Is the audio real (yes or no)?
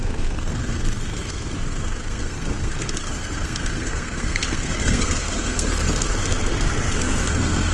no